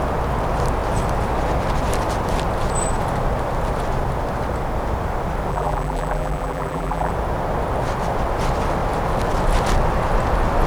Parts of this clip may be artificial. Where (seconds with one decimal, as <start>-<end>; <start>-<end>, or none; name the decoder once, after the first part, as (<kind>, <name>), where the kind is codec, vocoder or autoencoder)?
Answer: 5.5-7.1 (vocoder, BigVGAN v2)